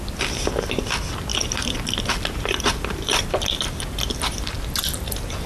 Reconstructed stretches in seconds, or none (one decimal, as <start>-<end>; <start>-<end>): 1.3-3.7